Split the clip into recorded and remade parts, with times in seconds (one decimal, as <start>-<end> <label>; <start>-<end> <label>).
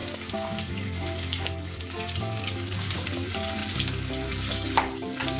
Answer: 0.0-5.4 remade